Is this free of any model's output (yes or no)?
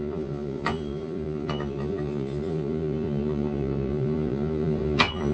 no